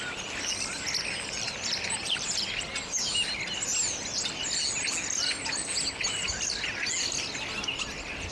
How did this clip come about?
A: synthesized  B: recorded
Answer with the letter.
B